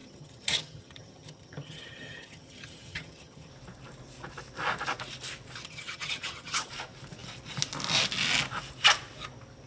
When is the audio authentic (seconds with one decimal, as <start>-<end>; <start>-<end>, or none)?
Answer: 3.5-5.6; 6.7-9.7